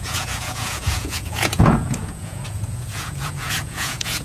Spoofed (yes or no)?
yes